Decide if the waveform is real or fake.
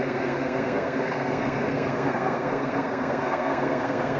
fake